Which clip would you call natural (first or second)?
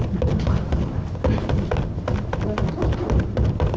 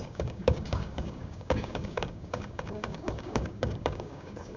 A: first